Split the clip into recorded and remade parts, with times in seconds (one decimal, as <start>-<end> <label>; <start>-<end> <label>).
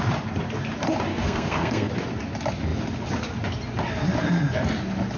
0.0-1.1 recorded; 1.1-1.9 remade; 1.9-5.2 recorded